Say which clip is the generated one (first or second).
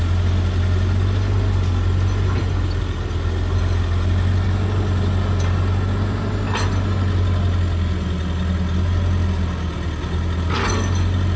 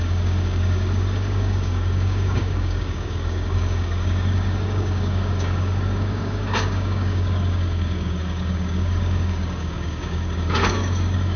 second